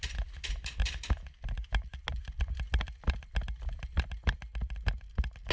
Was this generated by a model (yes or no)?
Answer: no